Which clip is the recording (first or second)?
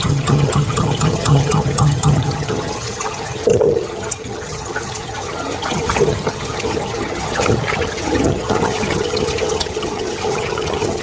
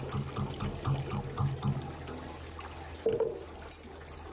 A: second